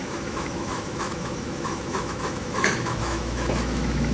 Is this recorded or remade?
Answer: remade